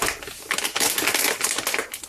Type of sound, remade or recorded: recorded